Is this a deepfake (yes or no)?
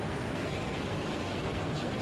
yes